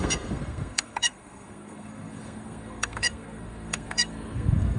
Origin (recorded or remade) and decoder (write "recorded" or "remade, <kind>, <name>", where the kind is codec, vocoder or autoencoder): remade, codec, SNAC